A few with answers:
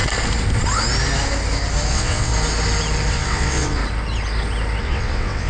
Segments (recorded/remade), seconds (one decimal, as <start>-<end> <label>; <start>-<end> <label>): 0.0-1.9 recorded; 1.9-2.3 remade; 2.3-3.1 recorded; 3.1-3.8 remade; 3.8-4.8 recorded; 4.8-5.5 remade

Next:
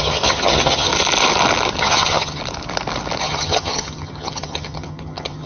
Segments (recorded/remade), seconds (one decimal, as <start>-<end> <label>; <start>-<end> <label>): 0.0-0.9 remade; 0.9-1.8 recorded; 1.8-2.4 remade; 2.4-3.2 recorded; 3.2-5.5 remade

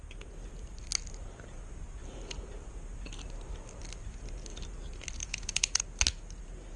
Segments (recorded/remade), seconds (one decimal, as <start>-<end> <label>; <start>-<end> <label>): 0.0-5.2 recorded; 5.2-5.8 remade; 5.8-6.8 recorded

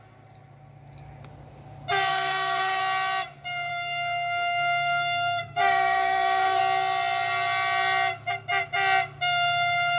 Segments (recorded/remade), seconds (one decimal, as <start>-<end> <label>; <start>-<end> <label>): 0.0-2.1 recorded; 2.1-2.8 remade; 2.8-3.7 recorded; 3.7-6.6 remade; 6.6-10.0 recorded

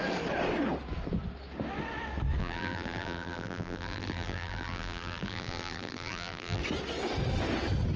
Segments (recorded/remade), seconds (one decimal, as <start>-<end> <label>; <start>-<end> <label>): 0.0-2.4 recorded; 2.4-6.6 remade; 6.6-8.0 recorded